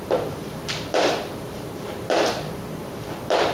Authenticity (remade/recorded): remade